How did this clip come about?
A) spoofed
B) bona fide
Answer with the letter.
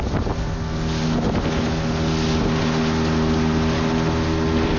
B